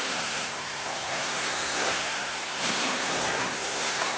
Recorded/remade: remade